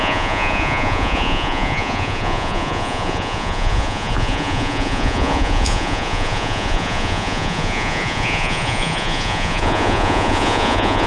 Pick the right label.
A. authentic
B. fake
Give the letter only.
B